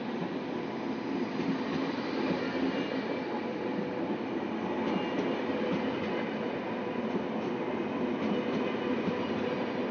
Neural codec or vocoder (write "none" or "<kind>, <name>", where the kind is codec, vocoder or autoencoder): none